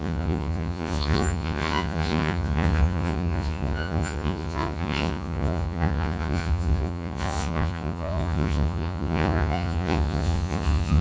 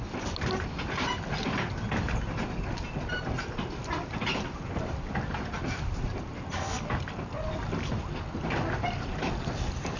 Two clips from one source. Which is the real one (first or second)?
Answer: second